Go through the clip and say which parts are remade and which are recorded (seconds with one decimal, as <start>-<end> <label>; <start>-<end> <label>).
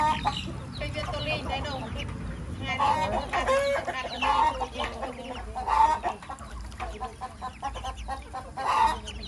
0.0-9.3 recorded